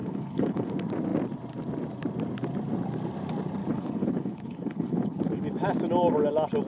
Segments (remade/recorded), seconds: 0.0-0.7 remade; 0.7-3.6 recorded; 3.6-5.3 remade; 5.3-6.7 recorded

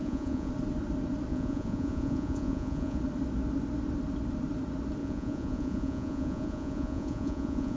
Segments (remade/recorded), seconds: 0.0-0.5 remade; 0.5-1.3 recorded; 1.3-3.0 remade; 3.0-5.0 recorded; 5.0-7.8 remade

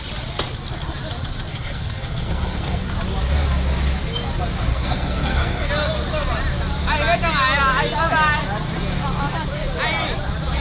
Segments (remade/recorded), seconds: 0.0-1.5 recorded; 1.5-2.9 remade; 2.9-4.7 recorded; 4.7-5.7 remade; 5.7-10.6 recorded